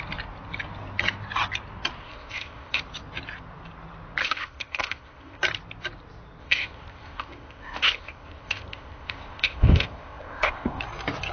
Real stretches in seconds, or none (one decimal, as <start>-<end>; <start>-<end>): 0.0-2.0; 2.8-4.2; 5.4-6.4; 10.8-11.3